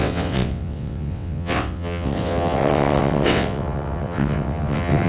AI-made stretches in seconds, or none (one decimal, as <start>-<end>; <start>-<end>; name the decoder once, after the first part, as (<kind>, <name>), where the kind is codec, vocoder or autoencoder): 0.0-5.1 (vocoder, WaveNeXt)